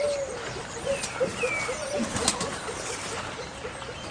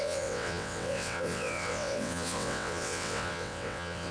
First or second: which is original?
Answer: first